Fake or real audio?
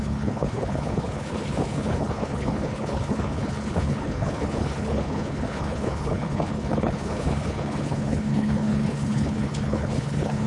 fake